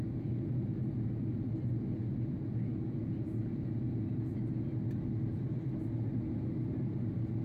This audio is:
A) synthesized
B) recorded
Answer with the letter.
B